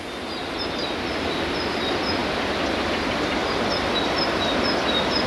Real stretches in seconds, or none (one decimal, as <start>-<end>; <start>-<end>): 0.0-0.4; 1.7-5.3